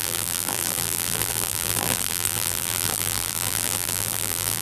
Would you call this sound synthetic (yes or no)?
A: yes